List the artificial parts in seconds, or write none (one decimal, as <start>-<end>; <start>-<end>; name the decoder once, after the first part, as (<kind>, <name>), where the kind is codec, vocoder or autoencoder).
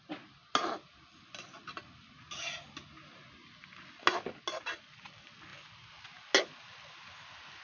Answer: none